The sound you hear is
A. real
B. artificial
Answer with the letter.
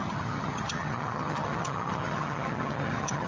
B